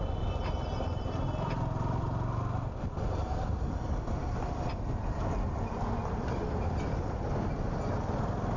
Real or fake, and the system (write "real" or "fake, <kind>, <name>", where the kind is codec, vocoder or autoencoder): real